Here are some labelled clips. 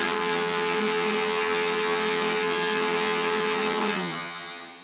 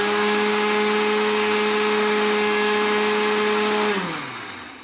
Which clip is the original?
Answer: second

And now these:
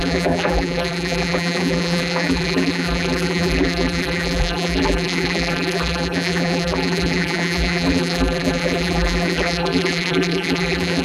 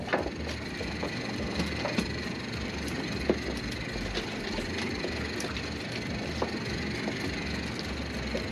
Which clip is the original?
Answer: second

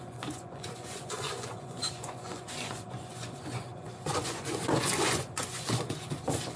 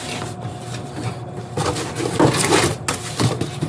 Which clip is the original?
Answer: second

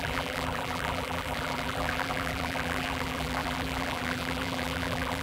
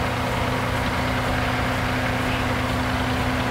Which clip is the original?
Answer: second